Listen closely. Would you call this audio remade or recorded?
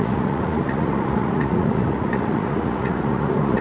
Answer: remade